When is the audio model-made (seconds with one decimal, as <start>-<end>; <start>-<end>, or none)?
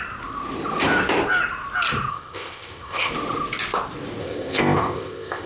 2.1-3.1; 4.2-5.5